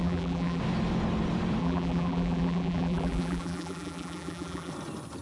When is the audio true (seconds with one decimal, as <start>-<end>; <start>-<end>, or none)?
0.6-1.6; 4.7-5.2